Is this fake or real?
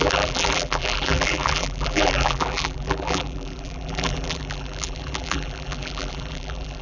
fake